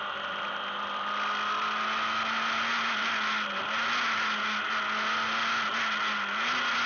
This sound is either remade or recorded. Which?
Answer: recorded